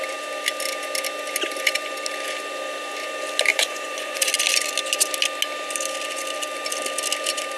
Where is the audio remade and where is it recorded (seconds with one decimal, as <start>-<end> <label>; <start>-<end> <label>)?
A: 0.0-3.5 recorded; 3.5-4.3 remade; 4.3-7.6 recorded